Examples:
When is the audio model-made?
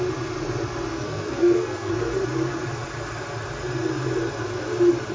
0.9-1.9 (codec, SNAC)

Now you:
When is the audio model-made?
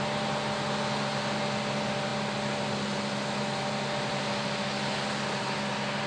none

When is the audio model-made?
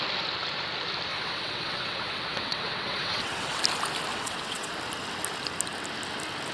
1.1-3.6 (vocoder, WaveNeXt); 4.1-4.7